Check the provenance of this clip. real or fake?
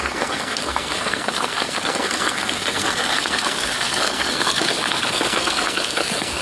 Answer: fake